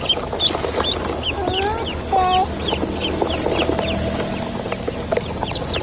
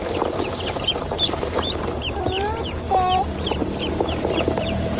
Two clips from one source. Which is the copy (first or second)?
second